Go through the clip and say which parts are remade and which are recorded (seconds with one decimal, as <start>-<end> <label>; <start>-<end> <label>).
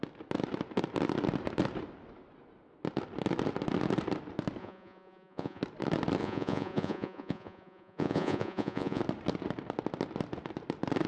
0.0-4.6 recorded; 4.6-5.6 remade; 5.6-6.2 recorded; 6.2-9.0 remade; 9.0-11.1 recorded